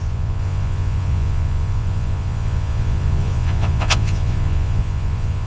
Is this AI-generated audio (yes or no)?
yes